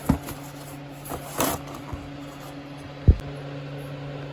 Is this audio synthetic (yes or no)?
no